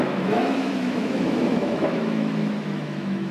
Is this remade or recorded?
remade